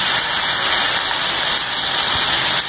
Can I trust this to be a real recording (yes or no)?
yes